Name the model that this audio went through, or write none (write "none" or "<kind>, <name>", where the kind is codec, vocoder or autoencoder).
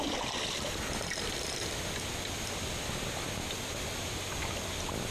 none